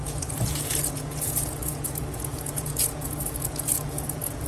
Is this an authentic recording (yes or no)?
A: no